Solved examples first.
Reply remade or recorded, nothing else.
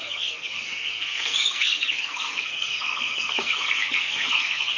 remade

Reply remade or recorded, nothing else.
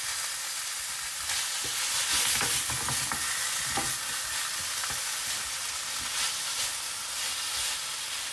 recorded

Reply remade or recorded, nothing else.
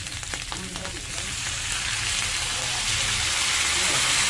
recorded